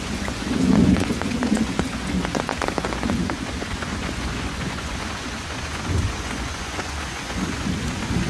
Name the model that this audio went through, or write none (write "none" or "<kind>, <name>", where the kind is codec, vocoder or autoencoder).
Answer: vocoder, Vocos